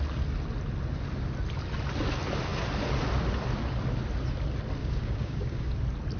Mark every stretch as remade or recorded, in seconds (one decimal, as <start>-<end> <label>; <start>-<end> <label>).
0.0-4.8 recorded; 4.8-5.7 remade; 5.7-6.2 recorded